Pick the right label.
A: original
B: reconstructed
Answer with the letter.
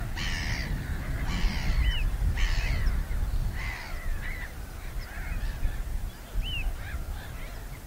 A